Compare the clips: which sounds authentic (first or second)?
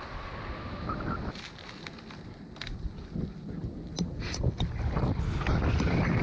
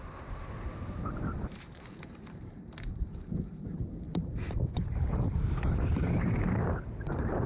first